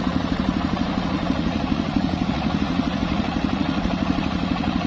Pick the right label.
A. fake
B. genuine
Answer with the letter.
A